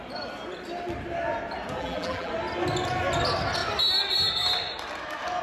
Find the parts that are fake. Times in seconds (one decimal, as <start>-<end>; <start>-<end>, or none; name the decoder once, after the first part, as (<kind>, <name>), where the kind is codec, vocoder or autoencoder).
1.8-2.3 (vocoder, BigVGAN v2)